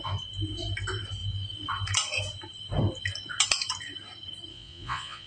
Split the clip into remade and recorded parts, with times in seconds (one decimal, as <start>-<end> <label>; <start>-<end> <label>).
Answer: 0.0-4.5 recorded; 4.5-5.3 remade